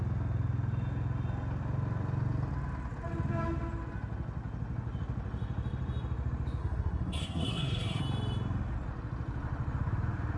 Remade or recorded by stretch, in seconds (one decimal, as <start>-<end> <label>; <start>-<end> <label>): 0.0-6.6 recorded; 6.6-8.0 remade; 8.0-10.4 recorded